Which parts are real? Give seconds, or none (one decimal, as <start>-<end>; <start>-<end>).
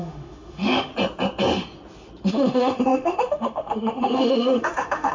0.9-2.3